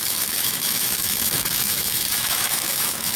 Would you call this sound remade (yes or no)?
yes